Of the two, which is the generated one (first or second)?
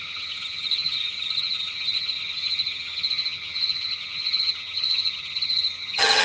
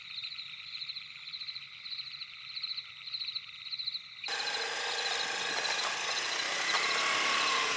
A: first